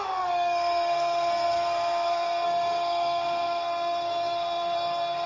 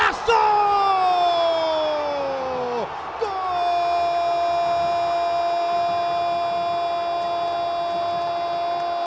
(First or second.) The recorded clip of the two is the second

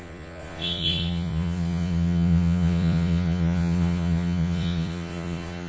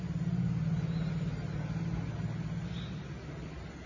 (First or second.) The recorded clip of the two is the second